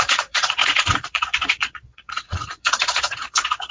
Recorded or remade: remade